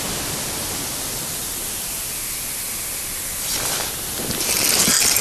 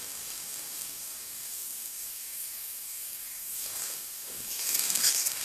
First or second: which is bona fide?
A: first